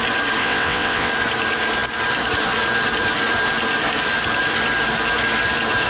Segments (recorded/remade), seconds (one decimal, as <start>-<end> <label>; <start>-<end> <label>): 0.0-0.4 recorded; 0.4-1.1 remade; 1.1-5.9 recorded